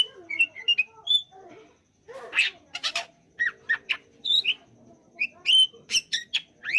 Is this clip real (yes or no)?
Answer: yes